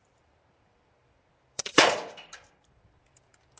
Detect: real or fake fake